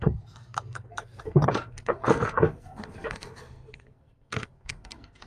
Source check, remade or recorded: remade